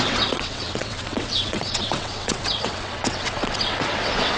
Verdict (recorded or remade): remade